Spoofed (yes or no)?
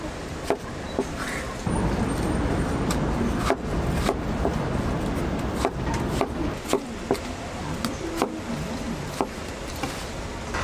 no